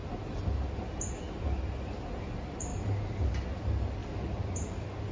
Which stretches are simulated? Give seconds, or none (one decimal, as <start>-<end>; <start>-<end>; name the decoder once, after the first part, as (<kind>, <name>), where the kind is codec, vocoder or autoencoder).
none